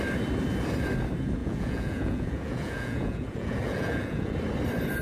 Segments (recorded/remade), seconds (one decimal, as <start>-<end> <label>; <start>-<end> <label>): 0.0-1.4 recorded; 1.4-4.4 remade; 4.4-5.0 recorded